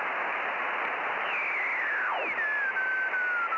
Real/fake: real